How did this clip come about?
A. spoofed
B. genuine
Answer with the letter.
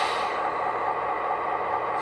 B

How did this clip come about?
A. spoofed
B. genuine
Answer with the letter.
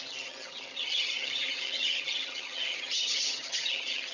A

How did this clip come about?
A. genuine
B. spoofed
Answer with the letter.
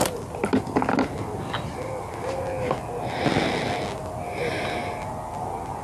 A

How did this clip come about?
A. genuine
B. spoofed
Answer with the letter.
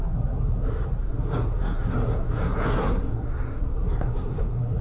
B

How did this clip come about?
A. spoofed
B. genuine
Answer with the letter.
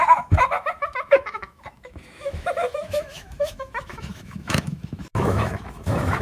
A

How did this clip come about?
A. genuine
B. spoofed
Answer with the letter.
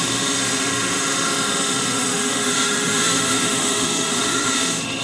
B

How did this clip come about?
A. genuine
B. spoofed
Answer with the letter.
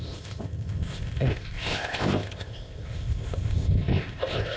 B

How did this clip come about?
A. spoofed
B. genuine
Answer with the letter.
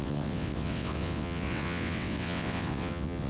A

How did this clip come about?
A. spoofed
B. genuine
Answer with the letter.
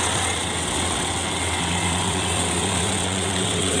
A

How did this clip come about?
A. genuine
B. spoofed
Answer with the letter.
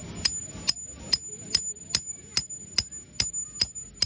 A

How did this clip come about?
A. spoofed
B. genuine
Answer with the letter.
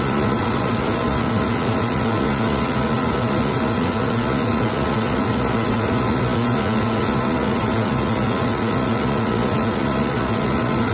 A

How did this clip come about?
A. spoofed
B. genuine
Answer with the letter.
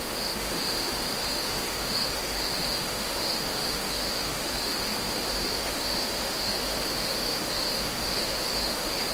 A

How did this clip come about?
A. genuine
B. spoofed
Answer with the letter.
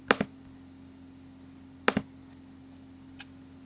A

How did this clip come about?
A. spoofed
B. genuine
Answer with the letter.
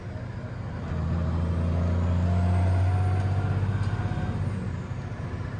B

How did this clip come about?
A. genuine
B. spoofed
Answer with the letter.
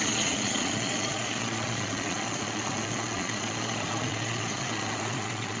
B